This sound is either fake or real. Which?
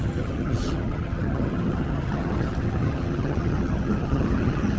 fake